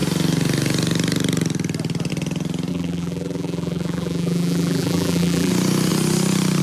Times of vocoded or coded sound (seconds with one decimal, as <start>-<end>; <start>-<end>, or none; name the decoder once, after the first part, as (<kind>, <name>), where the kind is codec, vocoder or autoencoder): 2.7-5.5 (vocoder, BigVGAN v2)